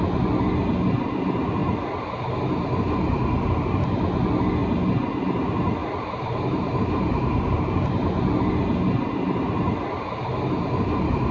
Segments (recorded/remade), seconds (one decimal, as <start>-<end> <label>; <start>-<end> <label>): 0.0-5.8 recorded; 5.8-8.3 remade; 8.3-11.3 recorded